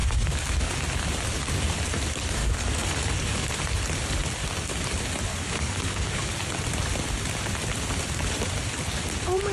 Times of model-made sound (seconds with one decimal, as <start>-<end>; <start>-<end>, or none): 0.0-0.7; 2.4-3.5; 5.3-6.3

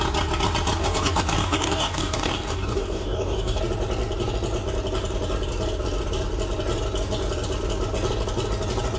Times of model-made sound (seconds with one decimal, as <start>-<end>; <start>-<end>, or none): 0.8-3.6

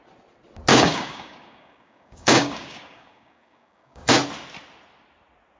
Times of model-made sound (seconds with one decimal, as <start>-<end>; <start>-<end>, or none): 0.7-4.1

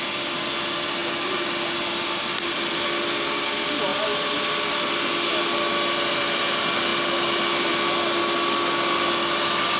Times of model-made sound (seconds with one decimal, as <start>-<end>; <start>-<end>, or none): none